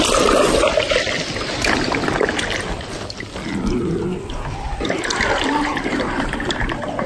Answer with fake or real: real